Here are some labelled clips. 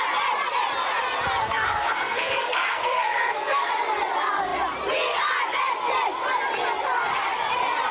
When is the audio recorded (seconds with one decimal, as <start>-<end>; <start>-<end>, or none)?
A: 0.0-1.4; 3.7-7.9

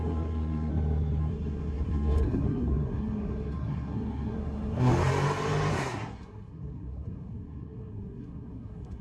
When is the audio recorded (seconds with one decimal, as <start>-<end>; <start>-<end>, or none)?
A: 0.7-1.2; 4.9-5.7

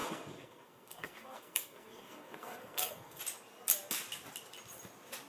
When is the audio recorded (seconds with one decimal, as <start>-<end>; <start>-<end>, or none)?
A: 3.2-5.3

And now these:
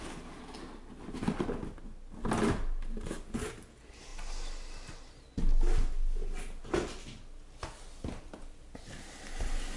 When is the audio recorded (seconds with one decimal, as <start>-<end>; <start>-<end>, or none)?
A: 0.0-9.8

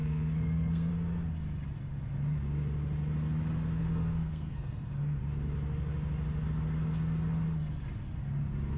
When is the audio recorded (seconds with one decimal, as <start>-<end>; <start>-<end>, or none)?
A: 0.9-3.8; 5.2-8.8